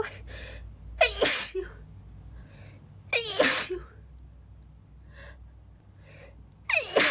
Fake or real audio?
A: real